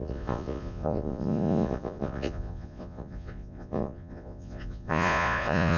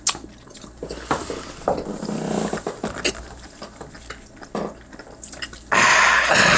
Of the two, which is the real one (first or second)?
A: second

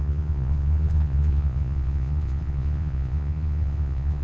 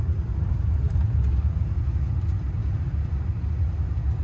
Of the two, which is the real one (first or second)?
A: second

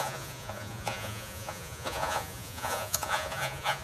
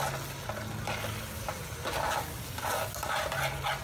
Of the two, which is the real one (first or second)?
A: second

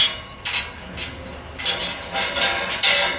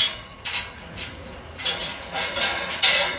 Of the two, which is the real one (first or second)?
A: first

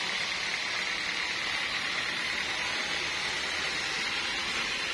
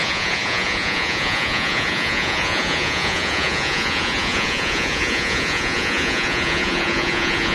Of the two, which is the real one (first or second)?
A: first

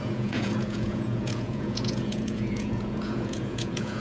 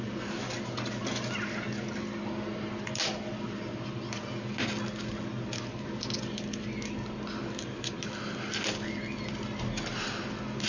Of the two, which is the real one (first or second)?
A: second